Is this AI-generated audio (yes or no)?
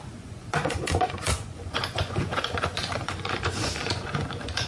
yes